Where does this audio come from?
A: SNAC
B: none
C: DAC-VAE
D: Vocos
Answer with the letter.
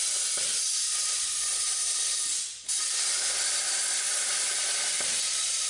B